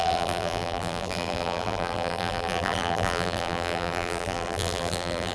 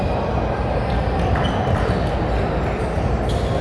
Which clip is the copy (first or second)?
first